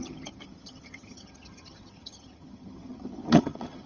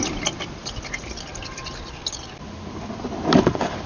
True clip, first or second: second